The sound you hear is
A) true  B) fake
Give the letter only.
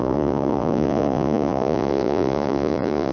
B